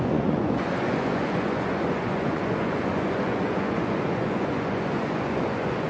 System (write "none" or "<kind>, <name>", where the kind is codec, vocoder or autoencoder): vocoder, Vocos